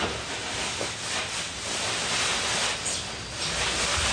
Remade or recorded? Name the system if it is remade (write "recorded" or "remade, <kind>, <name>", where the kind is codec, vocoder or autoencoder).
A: recorded